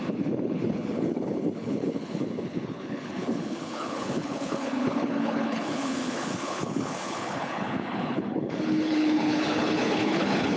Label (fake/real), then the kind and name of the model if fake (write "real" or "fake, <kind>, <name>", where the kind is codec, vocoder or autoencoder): fake, codec, HILCodec